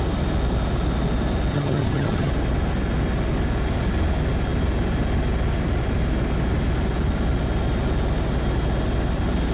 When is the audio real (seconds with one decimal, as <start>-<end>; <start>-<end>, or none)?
0.0-1.5; 2.3-9.5